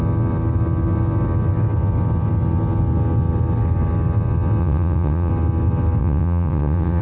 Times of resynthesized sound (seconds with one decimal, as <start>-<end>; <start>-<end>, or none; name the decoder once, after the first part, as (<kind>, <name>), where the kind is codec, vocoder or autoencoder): 4.6-5.3 (vocoder, WaveNeXt); 6.0-7.0